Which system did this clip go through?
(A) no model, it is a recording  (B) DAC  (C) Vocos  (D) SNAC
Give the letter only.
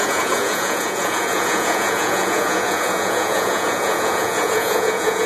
C